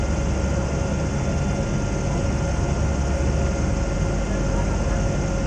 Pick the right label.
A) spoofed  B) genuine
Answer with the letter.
B